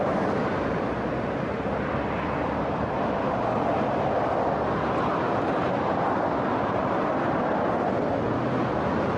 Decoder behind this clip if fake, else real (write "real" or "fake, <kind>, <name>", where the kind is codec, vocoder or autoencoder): real